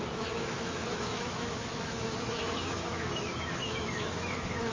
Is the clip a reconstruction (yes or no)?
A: yes